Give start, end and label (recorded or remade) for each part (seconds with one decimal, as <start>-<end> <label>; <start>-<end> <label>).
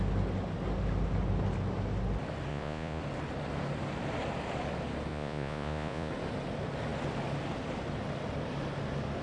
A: 0.0-2.5 recorded; 2.5-3.0 remade; 3.0-5.1 recorded; 5.1-6.1 remade; 6.1-9.2 recorded